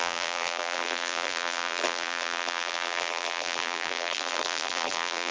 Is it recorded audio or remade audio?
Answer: remade